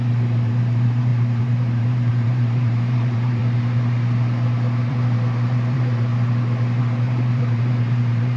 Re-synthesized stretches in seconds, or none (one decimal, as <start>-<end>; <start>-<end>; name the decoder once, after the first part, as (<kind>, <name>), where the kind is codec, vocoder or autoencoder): 0.0-3.4 (vocoder, BigVGAN v2); 4.9-6.1; 6.8-8.4